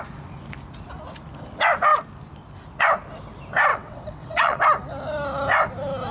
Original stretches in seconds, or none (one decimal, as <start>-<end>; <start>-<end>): 0.0-3.7; 4.6-6.1